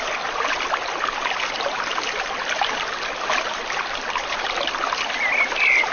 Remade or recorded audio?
recorded